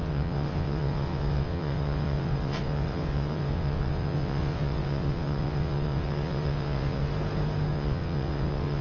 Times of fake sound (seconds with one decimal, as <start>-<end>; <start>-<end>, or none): 0.0-7.1; 7.7-8.8